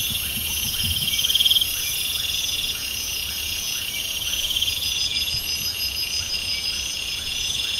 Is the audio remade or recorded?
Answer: remade